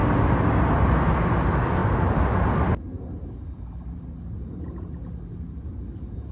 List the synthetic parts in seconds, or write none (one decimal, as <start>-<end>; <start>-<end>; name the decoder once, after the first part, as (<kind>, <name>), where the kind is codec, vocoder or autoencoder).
none